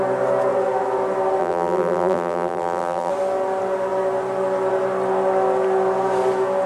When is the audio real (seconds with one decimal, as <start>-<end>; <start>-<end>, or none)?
0.0-1.4; 3.1-6.7